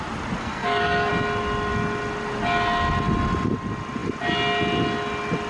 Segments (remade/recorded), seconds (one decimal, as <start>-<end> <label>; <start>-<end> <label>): 0.0-0.4 recorded; 0.4-1.1 remade; 1.1-5.5 recorded